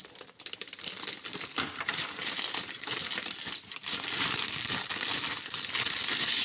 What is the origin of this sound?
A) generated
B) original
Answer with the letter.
B